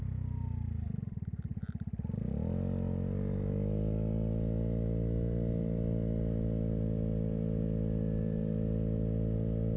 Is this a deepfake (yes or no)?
no